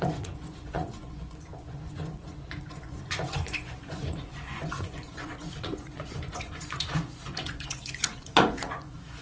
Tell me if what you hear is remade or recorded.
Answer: remade